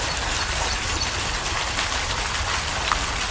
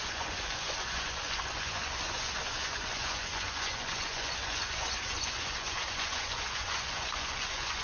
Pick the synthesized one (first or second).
second